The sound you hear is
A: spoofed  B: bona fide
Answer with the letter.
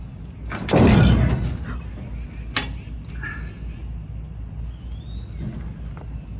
B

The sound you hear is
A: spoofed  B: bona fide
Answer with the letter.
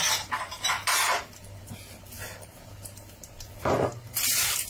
A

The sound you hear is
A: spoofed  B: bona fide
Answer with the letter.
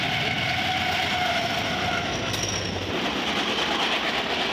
B